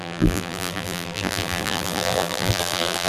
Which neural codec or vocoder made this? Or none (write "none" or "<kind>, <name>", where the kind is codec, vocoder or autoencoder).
vocoder, BigVGAN v2